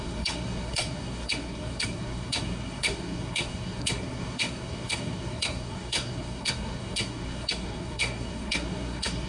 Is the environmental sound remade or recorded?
remade